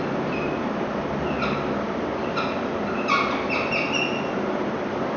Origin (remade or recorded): recorded